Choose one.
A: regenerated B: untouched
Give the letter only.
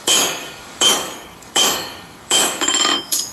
A